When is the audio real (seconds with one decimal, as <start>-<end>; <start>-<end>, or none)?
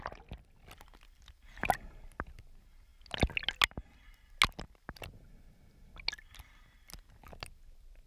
0.0-8.1